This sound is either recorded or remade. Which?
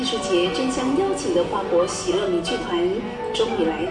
recorded